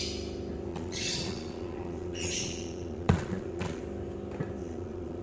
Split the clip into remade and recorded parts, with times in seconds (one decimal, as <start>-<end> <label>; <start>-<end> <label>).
0.0-0.7 recorded; 0.7-3.8 remade; 3.8-4.6 recorded; 4.6-5.2 remade